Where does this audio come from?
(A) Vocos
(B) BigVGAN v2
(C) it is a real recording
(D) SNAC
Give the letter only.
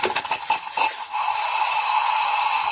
C